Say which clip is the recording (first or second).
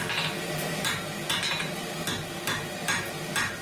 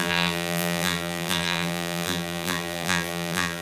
first